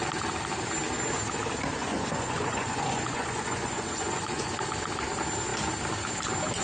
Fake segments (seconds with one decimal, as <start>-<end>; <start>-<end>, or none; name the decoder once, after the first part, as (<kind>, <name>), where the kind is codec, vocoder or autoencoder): 1.8-4.5 (vocoder, Vocos)